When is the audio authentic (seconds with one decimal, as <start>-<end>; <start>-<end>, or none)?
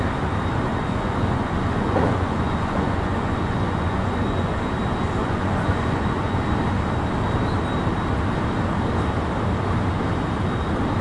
0.0-0.7; 4.6-5.2; 6.4-11.0